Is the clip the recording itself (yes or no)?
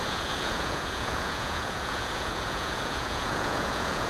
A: no